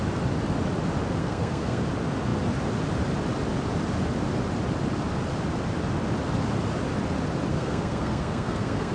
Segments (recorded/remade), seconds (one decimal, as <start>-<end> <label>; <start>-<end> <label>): 0.0-1.2 recorded; 1.2-1.8 remade; 1.8-7.5 recorded; 7.5-8.9 remade